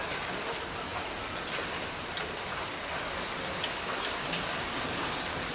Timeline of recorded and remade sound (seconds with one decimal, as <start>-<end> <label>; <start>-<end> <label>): 0.0-5.5 recorded